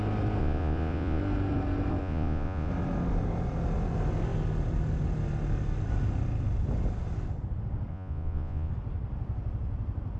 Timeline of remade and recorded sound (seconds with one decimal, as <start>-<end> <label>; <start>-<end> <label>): 0.0-0.4 recorded; 0.4-1.2 remade; 1.2-2.0 recorded; 2.0-2.7 remade; 2.7-7.9 recorded; 7.9-8.7 remade; 8.7-10.2 recorded